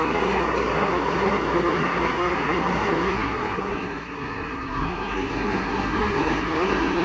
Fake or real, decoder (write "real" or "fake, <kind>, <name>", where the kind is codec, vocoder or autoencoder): fake, codec, SNAC